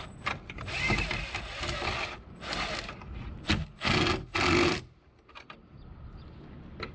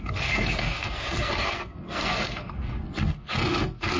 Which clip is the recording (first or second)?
first